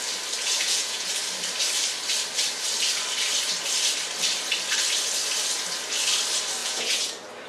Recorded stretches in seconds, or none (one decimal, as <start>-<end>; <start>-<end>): 0.0-0.4; 1.1-6.6; 7.1-7.5